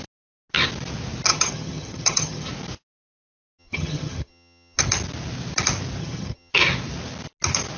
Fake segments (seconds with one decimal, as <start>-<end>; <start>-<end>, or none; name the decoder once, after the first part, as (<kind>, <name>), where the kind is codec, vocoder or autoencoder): 1.3-2.5 (vocoder, HiFi-GAN); 3.6-4.8; 6.0-6.5